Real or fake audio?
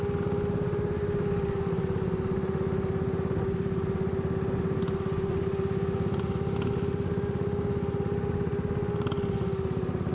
real